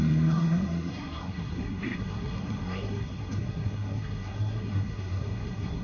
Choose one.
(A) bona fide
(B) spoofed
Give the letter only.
B